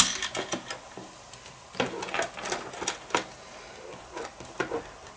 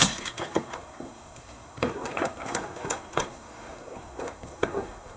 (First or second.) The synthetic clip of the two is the second